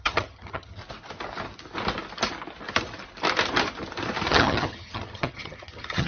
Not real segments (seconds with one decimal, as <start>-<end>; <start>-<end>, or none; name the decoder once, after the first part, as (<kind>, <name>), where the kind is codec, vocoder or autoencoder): 0.0-0.8 (vocoder, HiFi-GAN); 4.3-6.1